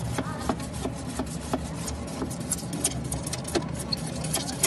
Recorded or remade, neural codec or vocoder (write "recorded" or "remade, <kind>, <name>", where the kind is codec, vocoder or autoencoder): recorded